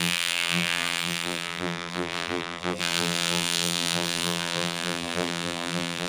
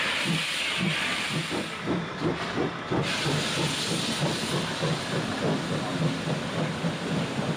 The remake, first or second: first